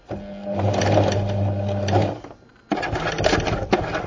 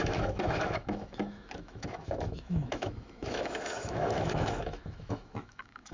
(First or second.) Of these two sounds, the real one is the first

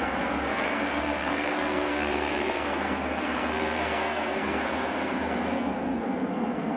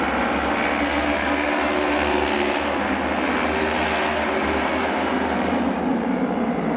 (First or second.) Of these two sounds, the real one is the second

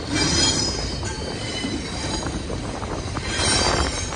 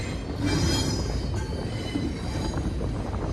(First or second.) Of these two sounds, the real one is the second